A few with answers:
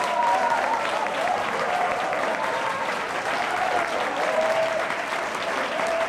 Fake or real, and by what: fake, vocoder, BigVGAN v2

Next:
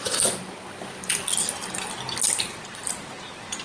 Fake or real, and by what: real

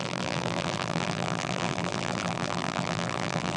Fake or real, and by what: fake, vocoder, BigVGAN v2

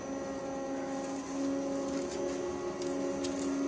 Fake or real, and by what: real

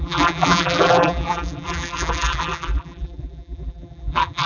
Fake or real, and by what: fake, vocoder, BigVGAN v2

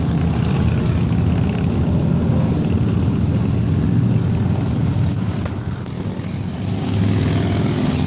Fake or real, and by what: real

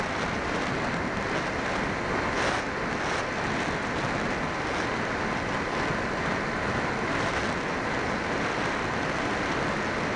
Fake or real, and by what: real